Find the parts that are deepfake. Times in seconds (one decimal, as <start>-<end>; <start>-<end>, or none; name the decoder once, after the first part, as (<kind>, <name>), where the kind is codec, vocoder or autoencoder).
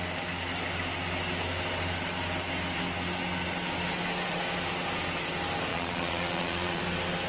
5.7-6.8 (vocoder, Vocos)